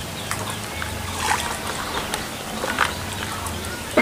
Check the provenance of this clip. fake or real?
real